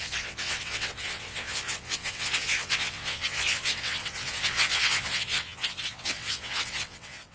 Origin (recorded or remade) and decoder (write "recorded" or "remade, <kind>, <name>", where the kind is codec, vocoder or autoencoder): remade, vocoder, WaveNeXt